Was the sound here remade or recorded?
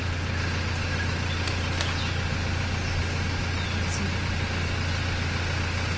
recorded